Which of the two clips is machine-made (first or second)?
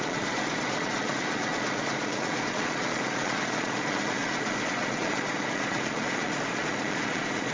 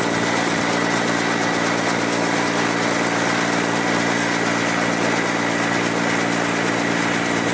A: first